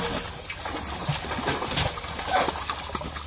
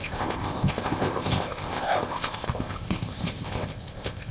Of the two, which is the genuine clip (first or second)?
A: first